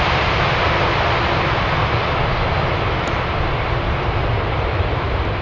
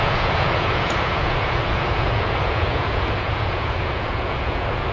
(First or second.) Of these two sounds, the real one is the first